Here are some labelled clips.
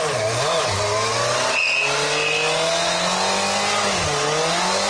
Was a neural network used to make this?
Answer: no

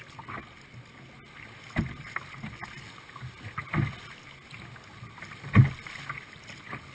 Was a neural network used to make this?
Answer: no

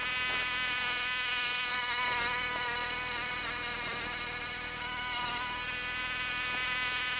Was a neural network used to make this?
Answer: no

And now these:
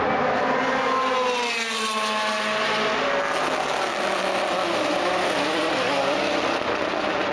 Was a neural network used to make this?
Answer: no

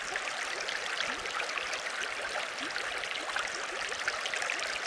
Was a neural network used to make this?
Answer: no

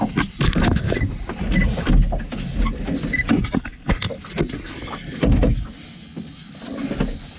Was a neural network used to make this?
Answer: no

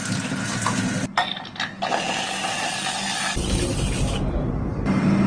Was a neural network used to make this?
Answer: no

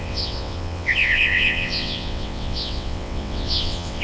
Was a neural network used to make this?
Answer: yes